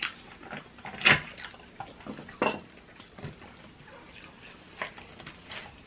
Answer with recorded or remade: recorded